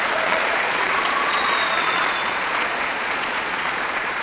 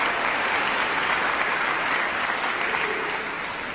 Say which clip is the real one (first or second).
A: second